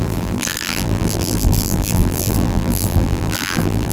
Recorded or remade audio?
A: remade